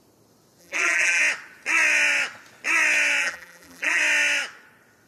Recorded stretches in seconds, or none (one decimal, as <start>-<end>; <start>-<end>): 0.0-0.6; 1.2-3.2; 4.0-5.1